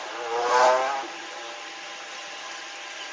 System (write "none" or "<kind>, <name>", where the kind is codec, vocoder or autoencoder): none